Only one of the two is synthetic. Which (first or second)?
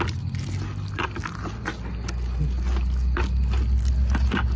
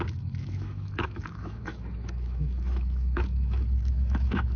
second